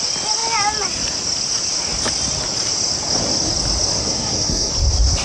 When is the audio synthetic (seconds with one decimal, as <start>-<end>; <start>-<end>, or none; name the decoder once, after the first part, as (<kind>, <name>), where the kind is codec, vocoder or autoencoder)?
4.0-4.7 (codec, SNAC)